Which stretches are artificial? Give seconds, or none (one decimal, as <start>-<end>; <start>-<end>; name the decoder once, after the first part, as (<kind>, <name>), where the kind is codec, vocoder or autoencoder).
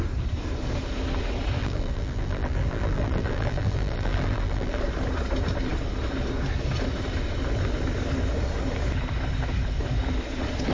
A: 1.6-4.8 (vocoder, BigVGAN v2)